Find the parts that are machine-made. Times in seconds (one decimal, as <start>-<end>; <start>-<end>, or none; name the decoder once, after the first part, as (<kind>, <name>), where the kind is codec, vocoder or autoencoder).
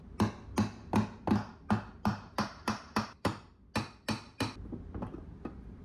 2.1-3.5 (vocoder, BigVGAN v2)